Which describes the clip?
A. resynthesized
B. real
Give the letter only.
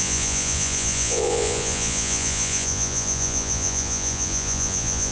A